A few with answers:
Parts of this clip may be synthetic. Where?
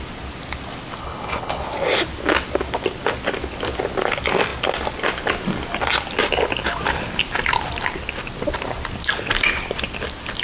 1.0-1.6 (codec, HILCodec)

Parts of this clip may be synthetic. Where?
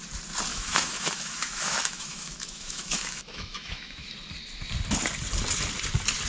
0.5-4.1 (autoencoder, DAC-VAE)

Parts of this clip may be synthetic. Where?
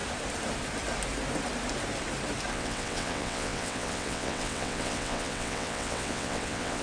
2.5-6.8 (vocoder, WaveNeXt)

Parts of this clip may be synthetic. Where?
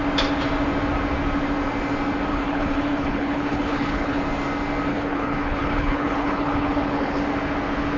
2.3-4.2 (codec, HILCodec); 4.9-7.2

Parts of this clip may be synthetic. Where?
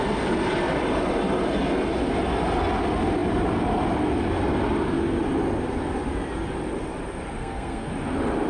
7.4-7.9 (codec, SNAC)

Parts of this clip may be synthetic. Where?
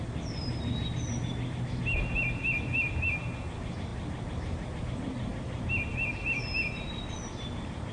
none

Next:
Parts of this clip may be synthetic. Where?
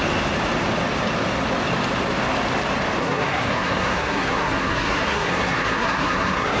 3.0-6.6 (codec, SNAC)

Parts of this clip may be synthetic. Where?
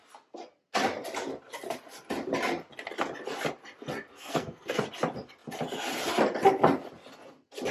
4.1-4.8 (codec, SNAC)